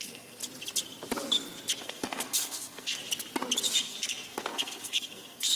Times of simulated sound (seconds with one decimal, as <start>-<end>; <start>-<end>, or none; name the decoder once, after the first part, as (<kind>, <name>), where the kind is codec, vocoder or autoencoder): 0.0-0.4 (codec, SNAC); 1.8-3.0; 3.8-5.6